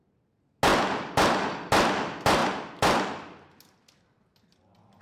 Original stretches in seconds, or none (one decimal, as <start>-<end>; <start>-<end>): 0.0-5.0